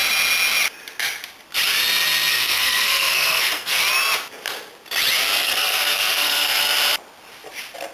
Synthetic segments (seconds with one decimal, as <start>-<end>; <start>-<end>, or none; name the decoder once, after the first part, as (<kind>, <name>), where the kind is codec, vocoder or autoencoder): 2.3-3.8 (codec, SNAC); 5.4-6.6